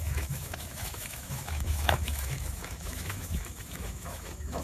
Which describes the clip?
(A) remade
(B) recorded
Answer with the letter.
A